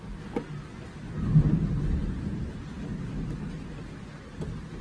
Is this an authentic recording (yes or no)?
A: yes